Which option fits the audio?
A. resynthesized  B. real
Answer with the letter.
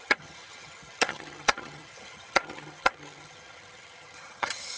A